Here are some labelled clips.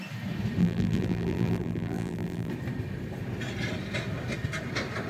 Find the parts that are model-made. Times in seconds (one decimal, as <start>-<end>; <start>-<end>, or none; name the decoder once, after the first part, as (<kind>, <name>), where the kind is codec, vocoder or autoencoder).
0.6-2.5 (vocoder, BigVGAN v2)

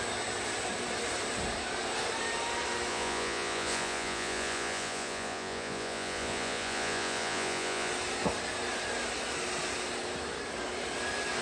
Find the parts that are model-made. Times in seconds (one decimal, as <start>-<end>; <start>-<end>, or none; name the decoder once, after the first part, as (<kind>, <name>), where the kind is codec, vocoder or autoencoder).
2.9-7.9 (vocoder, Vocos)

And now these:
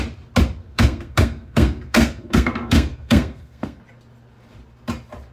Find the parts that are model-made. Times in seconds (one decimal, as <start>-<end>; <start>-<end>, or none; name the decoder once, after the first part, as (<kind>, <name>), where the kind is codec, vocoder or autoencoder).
0.6-3.8 (codec, SNAC)